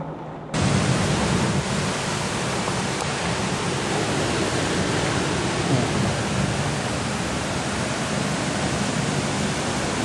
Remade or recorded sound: recorded